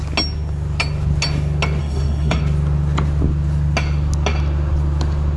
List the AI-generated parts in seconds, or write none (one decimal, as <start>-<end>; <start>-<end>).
1.8-2.4